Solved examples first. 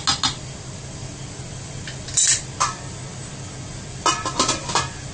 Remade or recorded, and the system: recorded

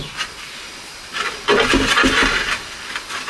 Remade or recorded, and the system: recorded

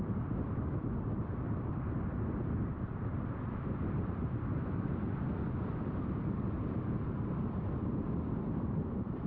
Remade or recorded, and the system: remade, vocoder, BigVGAN v2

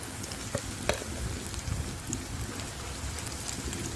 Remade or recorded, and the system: recorded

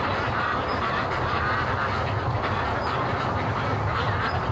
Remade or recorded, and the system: recorded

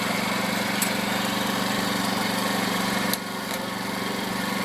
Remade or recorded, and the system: remade, vocoder, BigVGAN v2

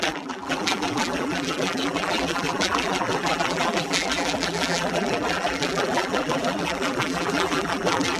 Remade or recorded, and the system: remade, vocoder, BigVGAN v2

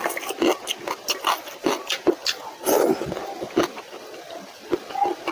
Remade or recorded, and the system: recorded